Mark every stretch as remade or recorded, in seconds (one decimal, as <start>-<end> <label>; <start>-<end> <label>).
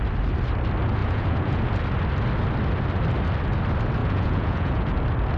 0.0-1.0 recorded; 1.0-1.7 remade; 1.7-4.0 recorded; 4.0-5.0 remade; 5.0-5.4 recorded